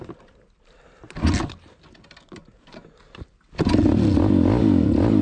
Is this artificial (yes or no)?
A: no